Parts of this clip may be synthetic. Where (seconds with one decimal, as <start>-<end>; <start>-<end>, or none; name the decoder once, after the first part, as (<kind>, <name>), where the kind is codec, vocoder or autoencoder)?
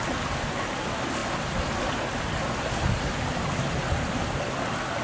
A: none